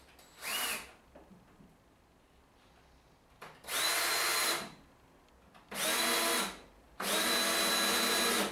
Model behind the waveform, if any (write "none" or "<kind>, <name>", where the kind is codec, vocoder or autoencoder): none